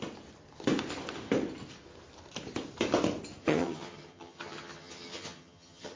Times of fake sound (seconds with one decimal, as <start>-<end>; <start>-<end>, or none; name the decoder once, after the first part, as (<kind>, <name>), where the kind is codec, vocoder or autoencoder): 3.4-6.0 (vocoder, HiFi-GAN)